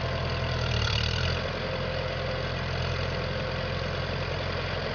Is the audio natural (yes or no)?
no